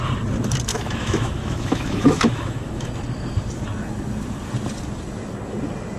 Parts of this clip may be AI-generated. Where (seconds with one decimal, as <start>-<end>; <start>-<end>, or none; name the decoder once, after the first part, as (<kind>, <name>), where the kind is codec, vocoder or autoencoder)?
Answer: 0.7-2.9 (autoencoder, DAC-VAE)